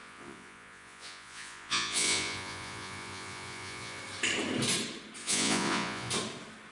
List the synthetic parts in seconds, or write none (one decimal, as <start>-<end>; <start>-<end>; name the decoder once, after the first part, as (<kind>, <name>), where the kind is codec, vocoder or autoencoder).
0.0-4.0 (vocoder, Vocos); 5.2-6.1

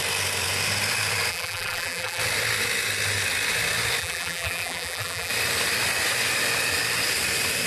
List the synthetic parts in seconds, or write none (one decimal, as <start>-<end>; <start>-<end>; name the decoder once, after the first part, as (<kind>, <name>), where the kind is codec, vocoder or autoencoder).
1.3-2.2 (vocoder, BigVGAN v2); 4.0-5.3